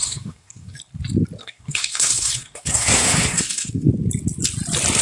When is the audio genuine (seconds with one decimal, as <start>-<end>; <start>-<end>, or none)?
0.8-1.4; 3.9-5.0